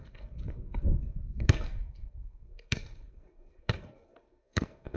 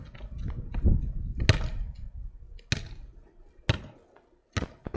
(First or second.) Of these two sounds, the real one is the second